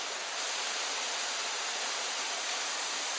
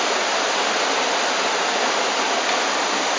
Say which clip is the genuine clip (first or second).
second